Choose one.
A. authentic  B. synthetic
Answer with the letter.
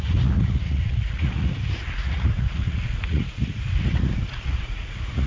B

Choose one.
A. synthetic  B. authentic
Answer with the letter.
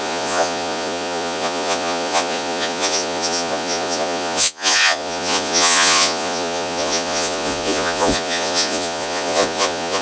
A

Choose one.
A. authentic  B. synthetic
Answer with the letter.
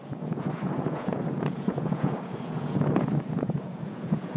B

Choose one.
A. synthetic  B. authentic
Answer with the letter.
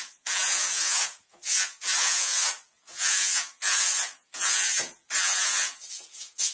A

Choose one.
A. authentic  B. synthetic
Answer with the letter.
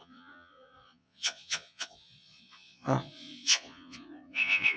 B